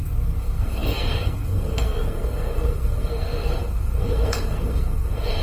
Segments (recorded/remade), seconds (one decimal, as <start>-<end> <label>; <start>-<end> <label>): 0.0-5.4 remade